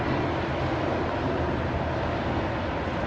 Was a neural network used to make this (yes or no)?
no